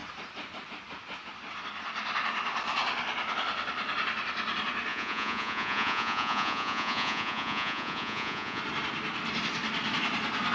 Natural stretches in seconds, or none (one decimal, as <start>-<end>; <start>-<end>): 0.0-4.9; 8.6-10.5